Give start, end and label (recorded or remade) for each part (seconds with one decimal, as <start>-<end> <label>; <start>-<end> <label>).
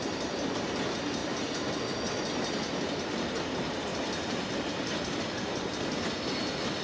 0.0-6.8 recorded